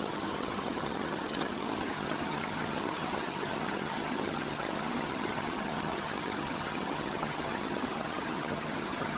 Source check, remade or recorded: remade